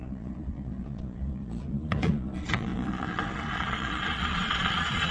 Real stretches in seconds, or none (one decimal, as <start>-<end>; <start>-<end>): none